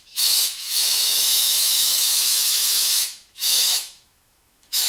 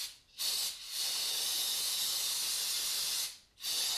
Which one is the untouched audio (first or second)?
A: second